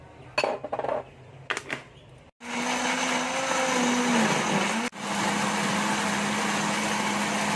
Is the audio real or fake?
real